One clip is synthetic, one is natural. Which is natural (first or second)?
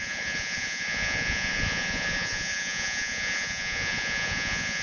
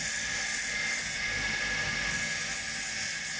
second